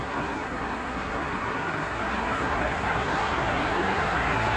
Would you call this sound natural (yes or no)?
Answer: no